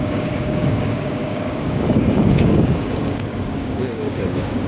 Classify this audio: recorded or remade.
remade